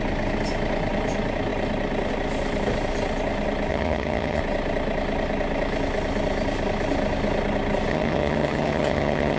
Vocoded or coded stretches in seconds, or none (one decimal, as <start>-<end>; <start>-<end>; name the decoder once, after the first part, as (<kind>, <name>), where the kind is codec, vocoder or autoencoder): 3.7-4.4 (vocoder, HiFi-GAN); 7.9-9.4